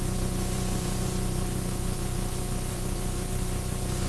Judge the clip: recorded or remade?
remade